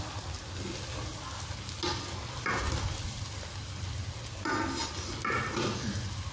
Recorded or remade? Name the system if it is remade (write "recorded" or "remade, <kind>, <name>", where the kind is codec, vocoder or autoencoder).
recorded